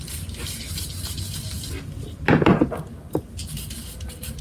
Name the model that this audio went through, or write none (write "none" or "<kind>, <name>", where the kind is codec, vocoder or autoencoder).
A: none